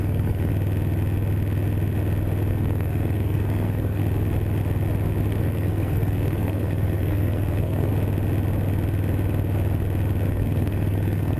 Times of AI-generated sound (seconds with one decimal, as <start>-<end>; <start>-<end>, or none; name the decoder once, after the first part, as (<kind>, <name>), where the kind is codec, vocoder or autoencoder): 0.0-0.5 (codec, SNAC); 2.5-4.0; 5.4-7.9; 10.3-11.4